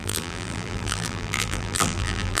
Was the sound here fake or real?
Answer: fake